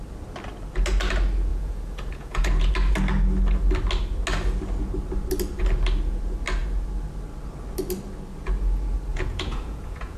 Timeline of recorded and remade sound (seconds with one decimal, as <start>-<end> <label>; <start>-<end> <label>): 0.0-1.5 recorded; 1.5-2.7 remade; 2.7-9.1 recorded; 9.1-10.2 remade

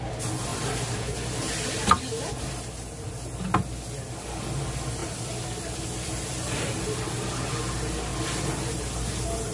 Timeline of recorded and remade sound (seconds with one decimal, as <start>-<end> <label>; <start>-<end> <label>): 0.0-5.0 recorded; 5.0-7.1 remade; 7.1-9.5 recorded

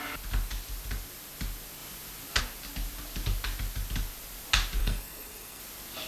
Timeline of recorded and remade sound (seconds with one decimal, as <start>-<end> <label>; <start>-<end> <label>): 0.0-4.8 recorded; 4.8-5.6 remade; 5.6-6.1 recorded

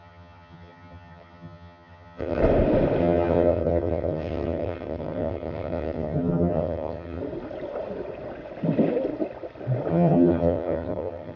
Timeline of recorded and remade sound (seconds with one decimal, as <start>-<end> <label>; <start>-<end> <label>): 0.0-2.4 remade; 2.4-3.0 recorded; 3.0-7.2 remade; 7.2-9.9 recorded; 9.9-11.4 remade

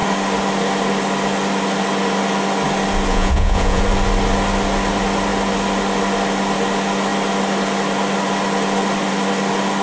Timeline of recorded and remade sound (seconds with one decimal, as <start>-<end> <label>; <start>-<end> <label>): 0.0-3.1 recorded; 3.1-3.8 remade; 3.8-9.8 recorded

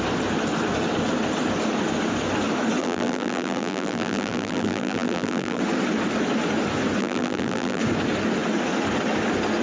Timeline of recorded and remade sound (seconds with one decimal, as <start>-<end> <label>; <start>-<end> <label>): 0.0-2.8 recorded; 2.8-5.6 remade; 5.6-7.0 recorded; 7.0-7.8 remade; 7.8-9.6 recorded